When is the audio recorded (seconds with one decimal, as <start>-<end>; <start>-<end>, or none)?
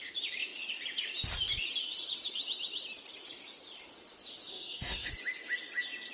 0.0-4.5; 5.1-6.1